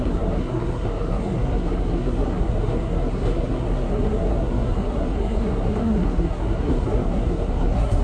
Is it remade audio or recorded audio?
remade